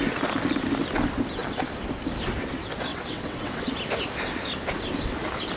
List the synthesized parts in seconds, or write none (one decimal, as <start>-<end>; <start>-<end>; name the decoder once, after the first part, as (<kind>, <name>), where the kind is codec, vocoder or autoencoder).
2.9-3.7 (vocoder, WaveNeXt)